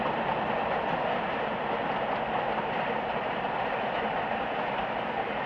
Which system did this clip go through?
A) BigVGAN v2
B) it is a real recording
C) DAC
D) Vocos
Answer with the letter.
B